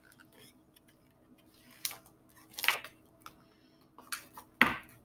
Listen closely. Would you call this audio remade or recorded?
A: recorded